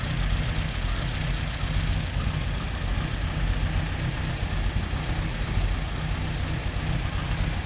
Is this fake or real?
real